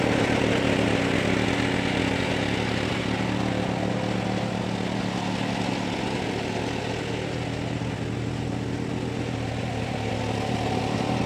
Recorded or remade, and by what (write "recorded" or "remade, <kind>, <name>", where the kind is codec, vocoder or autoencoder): recorded